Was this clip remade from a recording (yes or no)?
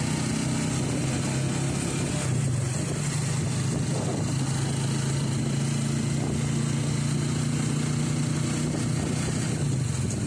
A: no